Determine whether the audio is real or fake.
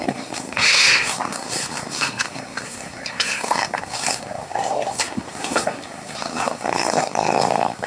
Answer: fake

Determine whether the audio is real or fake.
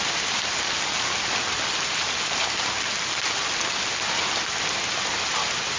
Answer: real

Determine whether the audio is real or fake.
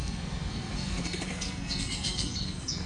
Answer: fake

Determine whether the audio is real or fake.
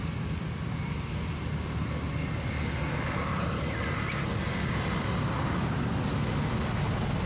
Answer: real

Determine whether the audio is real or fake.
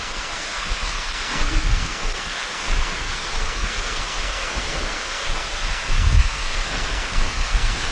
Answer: fake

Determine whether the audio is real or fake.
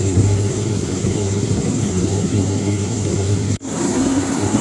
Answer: fake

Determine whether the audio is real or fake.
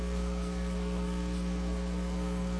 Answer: fake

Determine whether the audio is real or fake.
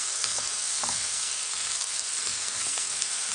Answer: fake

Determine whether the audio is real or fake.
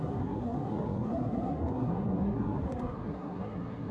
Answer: fake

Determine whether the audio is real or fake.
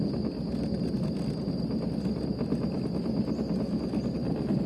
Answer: real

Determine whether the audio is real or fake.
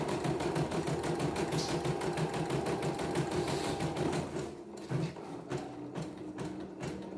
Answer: real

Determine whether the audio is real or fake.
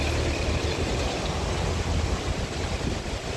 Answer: real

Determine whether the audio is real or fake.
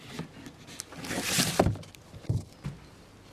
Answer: real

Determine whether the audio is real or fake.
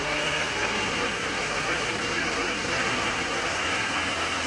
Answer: fake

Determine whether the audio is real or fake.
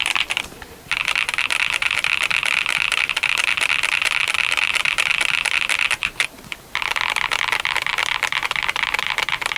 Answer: real